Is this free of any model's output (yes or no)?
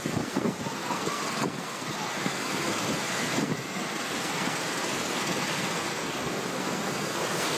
no